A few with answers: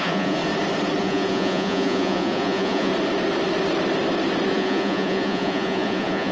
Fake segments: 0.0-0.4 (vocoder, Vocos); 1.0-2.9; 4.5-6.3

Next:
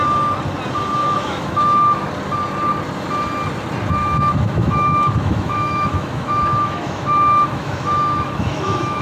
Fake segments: 1.0-2.1 (autoencoder, DAC-VAE); 4.0-9.0